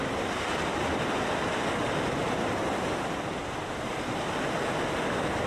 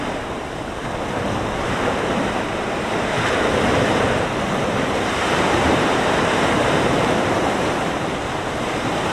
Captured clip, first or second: first